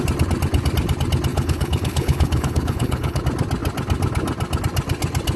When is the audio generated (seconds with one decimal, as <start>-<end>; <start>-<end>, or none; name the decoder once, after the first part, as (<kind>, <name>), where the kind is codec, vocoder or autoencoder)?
1.3-3.2 (codec, HILCodec)